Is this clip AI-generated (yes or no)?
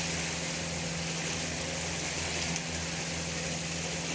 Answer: no